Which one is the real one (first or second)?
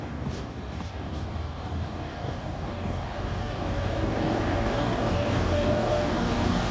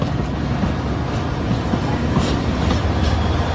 second